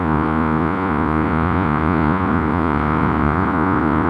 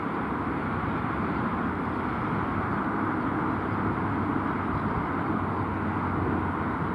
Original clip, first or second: second